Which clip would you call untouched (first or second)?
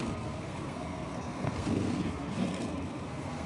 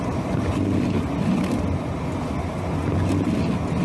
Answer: second